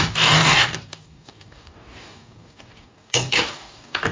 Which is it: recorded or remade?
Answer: remade